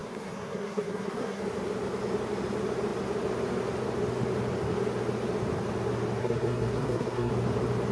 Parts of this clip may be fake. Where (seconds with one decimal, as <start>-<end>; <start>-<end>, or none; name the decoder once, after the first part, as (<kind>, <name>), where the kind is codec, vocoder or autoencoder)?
0.0-1.4 (codec, SNAC); 6.2-7.3